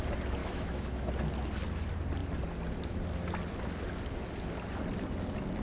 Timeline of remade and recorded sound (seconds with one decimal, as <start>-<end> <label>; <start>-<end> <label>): 0.0-0.4 recorded; 0.4-1.1 remade; 1.1-5.6 recorded